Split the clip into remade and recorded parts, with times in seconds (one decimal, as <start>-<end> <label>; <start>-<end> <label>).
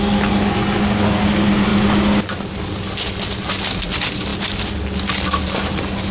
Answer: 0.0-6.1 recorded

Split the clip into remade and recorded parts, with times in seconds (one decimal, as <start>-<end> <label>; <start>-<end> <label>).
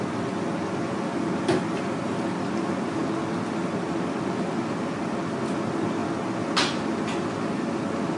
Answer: 0.0-8.2 recorded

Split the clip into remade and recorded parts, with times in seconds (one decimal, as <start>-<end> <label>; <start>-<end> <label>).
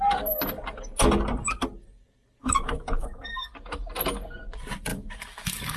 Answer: 0.0-2.4 recorded; 2.4-3.5 remade; 3.5-4.9 recorded; 4.9-5.8 remade